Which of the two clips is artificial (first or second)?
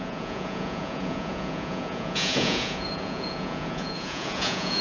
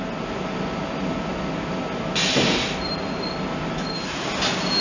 first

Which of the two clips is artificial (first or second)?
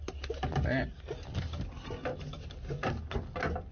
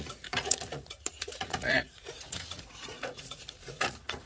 second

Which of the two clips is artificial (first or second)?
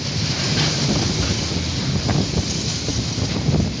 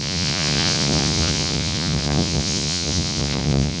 second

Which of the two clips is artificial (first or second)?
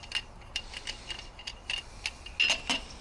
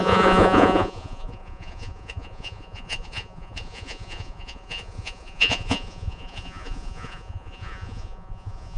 second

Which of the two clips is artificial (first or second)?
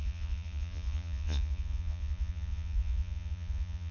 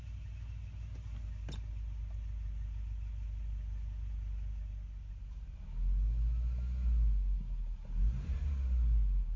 first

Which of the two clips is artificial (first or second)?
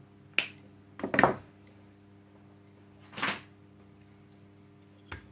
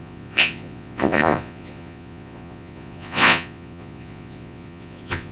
second